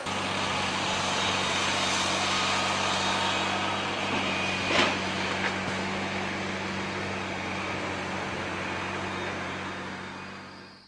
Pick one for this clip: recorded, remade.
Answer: recorded